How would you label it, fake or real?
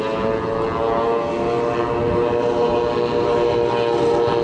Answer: real